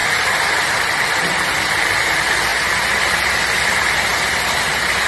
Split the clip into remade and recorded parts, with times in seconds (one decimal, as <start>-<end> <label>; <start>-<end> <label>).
0.0-5.1 recorded

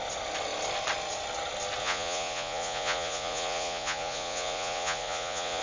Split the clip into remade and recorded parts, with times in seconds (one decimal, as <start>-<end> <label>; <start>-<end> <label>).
0.0-1.8 recorded; 1.8-5.6 remade

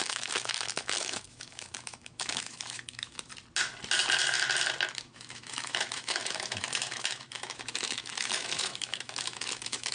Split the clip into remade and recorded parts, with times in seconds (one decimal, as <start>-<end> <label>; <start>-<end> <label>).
0.0-3.3 remade; 3.3-4.9 recorded; 4.9-9.9 remade

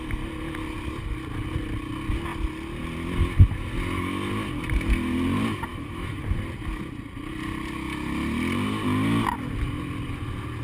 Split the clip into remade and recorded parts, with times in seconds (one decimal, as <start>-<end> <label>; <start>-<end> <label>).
0.0-5.7 recorded; 5.7-6.2 remade; 6.2-10.6 recorded